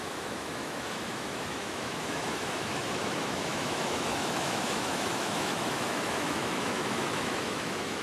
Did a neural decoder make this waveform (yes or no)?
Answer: yes